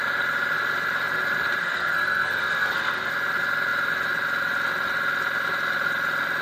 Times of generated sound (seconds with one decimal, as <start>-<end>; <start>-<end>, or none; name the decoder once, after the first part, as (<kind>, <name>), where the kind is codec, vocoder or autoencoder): 1.6-3.1 (codec, SNAC)